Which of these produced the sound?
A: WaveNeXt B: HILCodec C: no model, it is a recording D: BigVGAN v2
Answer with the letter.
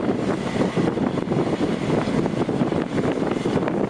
C